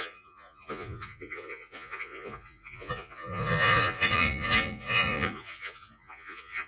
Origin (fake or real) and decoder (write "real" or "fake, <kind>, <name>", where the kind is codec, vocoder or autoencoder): fake, vocoder, Vocos